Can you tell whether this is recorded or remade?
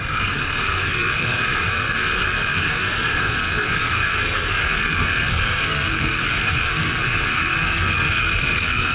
remade